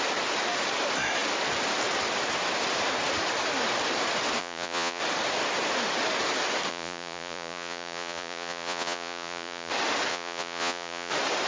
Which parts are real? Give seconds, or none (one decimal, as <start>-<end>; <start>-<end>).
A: 0.0-4.4; 5.0-6.7; 9.7-10.1; 11.1-11.5